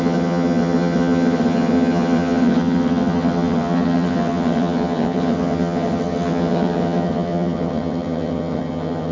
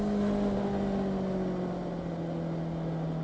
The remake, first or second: first